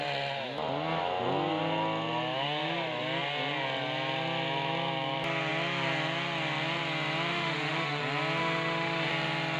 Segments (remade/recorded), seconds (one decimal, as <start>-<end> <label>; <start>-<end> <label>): 0.0-7.3 recorded; 7.3-8.0 remade; 8.0-8.4 recorded; 8.4-9.1 remade; 9.1-9.6 recorded